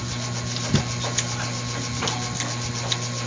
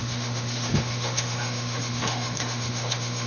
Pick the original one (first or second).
first